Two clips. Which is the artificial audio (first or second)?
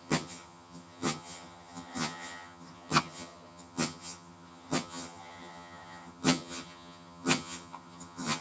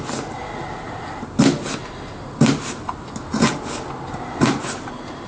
first